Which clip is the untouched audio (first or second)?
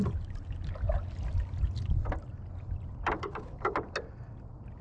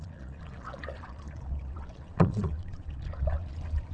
first